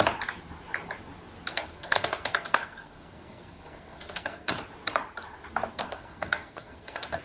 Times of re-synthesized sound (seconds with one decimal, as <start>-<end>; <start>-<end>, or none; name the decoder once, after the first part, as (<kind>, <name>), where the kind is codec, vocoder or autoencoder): 1.5-4.6 (codec, SNAC); 5.7-7.2